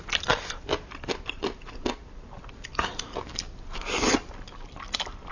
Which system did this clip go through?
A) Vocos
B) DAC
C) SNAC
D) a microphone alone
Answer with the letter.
D